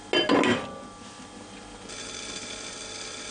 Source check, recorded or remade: recorded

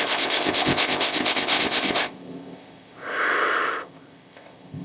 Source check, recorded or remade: remade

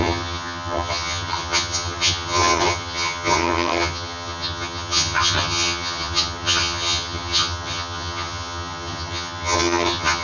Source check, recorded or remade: remade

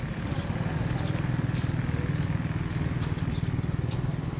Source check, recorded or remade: recorded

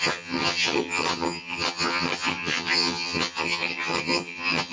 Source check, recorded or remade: remade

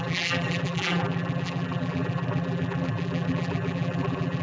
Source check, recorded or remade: remade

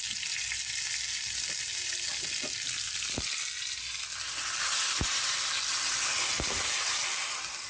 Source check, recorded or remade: recorded